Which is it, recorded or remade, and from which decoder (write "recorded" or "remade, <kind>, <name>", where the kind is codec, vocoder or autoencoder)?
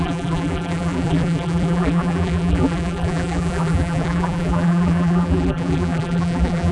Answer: remade, vocoder, BigVGAN v2